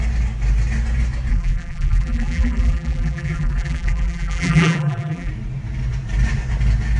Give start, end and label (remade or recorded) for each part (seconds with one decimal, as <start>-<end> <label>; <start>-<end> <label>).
0.0-1.3 recorded; 1.3-5.3 remade; 5.3-7.0 recorded